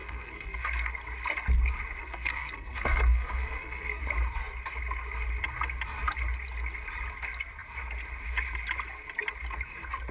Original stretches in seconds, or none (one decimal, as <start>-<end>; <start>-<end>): 0.9-2.0; 4.0-10.1